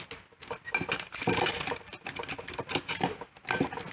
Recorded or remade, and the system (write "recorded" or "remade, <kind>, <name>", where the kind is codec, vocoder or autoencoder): recorded